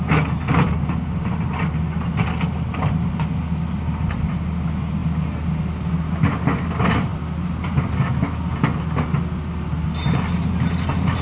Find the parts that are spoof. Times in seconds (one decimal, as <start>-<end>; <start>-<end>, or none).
7.1-7.7